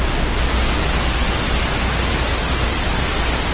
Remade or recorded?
recorded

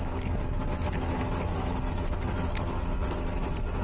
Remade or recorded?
recorded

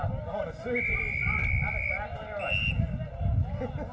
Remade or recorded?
recorded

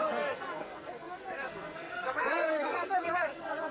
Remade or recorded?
remade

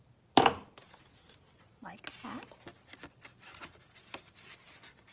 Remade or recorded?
recorded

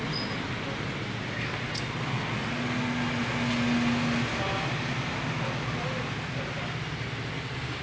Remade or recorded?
recorded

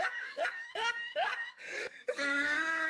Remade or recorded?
remade